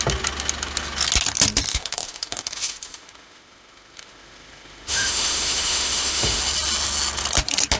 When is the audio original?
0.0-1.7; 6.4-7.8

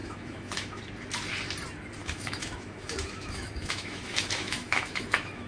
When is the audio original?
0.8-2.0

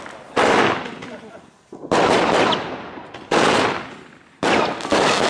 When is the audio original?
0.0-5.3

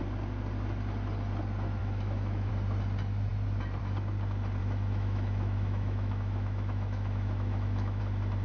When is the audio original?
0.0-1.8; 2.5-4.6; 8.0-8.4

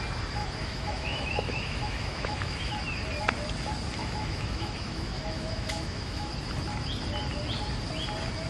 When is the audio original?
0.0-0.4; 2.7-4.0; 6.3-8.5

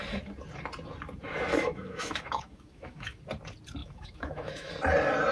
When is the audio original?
0.0-1.5; 3.2-3.8; 4.7-5.3